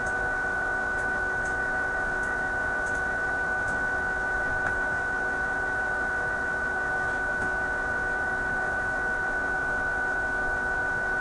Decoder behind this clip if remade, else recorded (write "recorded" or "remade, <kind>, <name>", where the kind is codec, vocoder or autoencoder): remade, autoencoder, DAC-VAE